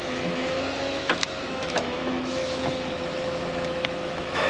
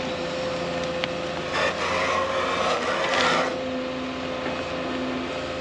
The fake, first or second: first